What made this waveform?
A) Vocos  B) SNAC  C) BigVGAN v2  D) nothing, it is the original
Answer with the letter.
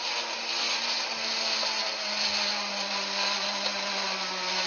D